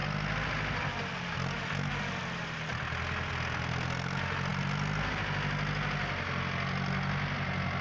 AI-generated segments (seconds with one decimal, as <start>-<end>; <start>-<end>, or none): none

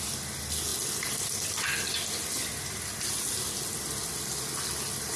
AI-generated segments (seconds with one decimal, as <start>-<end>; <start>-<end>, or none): none

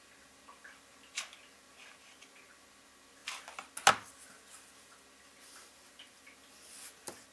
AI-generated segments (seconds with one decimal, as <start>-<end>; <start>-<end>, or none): none